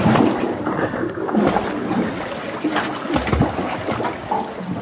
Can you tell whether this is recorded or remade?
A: recorded